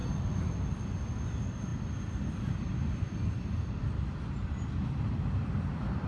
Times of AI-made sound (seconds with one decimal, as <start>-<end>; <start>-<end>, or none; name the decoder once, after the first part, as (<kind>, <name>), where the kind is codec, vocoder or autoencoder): 1.2-6.1 (vocoder, BigVGAN v2)